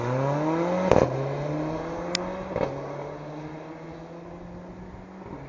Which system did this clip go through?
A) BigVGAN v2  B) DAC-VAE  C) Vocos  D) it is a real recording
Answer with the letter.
D